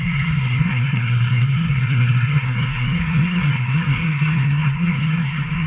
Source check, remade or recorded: remade